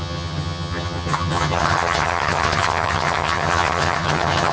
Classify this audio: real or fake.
fake